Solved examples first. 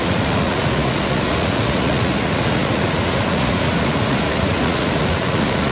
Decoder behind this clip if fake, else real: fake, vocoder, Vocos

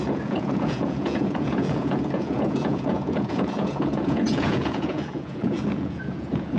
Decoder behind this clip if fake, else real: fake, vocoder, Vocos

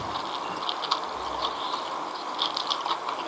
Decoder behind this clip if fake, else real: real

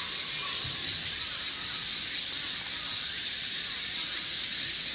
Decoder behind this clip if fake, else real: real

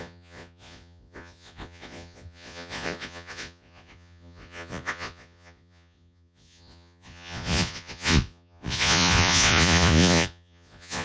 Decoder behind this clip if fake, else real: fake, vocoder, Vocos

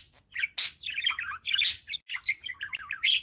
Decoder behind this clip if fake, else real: real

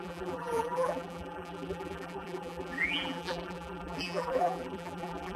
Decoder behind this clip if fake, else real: fake, vocoder, BigVGAN v2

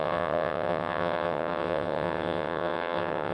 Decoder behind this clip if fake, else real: fake, vocoder, WaveNeXt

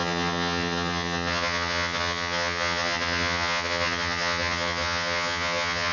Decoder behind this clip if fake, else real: fake, vocoder, HiFi-GAN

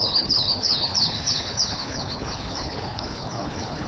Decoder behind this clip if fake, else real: fake, codec, HILCodec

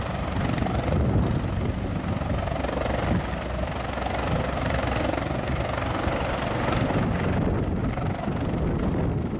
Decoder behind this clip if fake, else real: real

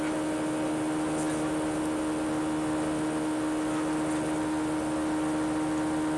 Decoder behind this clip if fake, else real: real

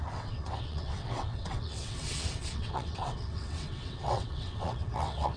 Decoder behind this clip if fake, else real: fake, vocoder, WaveNeXt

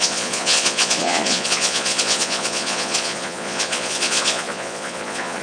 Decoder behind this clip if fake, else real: fake, vocoder, Vocos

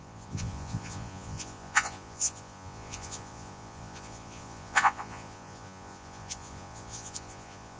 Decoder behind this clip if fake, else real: fake, vocoder, Vocos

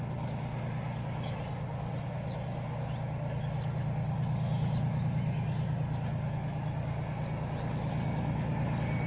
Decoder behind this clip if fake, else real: real